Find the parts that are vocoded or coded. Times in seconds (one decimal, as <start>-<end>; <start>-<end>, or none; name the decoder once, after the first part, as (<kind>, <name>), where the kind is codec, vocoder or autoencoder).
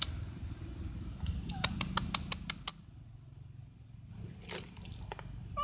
none